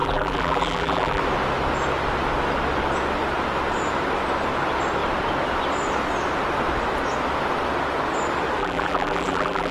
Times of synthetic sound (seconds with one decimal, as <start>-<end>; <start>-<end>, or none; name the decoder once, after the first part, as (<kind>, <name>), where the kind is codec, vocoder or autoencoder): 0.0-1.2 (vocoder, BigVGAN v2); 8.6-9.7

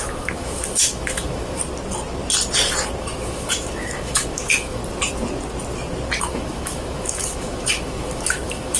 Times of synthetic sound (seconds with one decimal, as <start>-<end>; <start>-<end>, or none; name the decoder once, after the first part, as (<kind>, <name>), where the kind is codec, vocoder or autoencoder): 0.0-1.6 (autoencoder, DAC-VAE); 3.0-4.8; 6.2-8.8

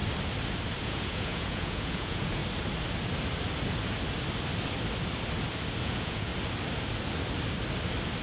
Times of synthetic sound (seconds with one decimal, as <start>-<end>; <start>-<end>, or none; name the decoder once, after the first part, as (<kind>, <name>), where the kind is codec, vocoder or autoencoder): 0.8-2.4 (vocoder, Vocos); 5.8-6.3

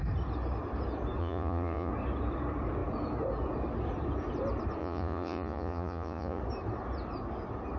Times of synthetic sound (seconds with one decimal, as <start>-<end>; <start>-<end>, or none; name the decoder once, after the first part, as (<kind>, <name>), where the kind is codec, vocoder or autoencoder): 1.2-1.9 (vocoder, Vocos); 4.8-6.4

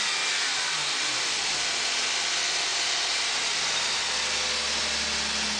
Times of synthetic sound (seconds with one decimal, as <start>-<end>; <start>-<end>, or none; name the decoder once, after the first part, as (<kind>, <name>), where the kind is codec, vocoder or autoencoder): 0.8-1.5 (vocoder, BigVGAN v2); 2.7-4.0